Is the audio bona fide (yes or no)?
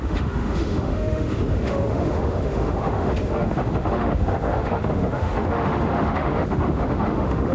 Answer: no